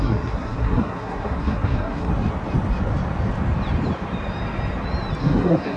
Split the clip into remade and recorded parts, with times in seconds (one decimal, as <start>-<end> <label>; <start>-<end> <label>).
0.0-2.1 remade; 2.1-5.2 recorded; 5.2-5.8 remade